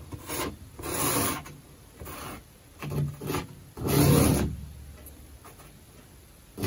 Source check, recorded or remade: recorded